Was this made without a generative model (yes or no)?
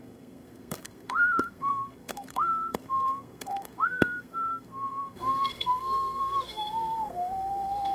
no